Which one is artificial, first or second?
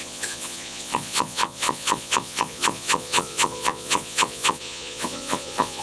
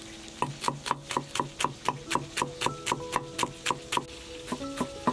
first